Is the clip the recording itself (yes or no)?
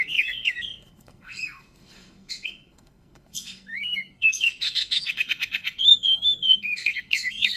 no